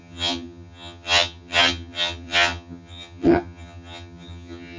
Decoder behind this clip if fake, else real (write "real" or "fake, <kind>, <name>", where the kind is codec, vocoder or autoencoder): fake, vocoder, HiFi-GAN